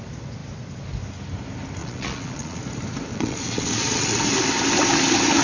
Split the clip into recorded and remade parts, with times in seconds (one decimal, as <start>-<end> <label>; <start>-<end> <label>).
0.0-1.8 recorded; 1.8-2.6 remade; 2.6-3.1 recorded; 3.1-4.2 remade; 4.2-5.4 recorded